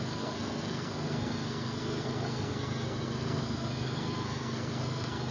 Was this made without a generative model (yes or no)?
no